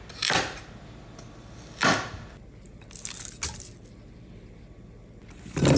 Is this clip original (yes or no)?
yes